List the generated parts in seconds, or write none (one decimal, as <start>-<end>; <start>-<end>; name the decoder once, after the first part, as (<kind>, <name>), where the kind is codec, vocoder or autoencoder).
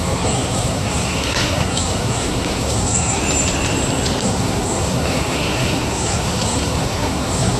0.0-3.2 (codec, SNAC); 4.2-7.6